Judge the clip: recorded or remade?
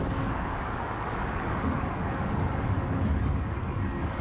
remade